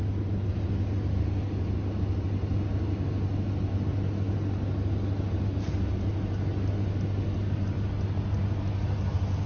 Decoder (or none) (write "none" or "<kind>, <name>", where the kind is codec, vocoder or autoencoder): none